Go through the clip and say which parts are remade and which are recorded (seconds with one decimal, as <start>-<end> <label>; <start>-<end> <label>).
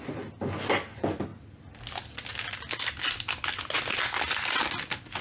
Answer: 0.0-5.2 recorded